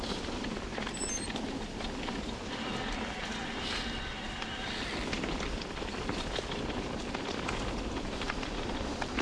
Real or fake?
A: fake